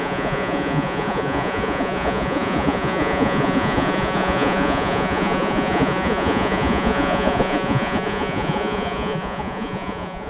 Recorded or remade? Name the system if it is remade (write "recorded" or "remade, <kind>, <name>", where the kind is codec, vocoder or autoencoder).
remade, vocoder, Vocos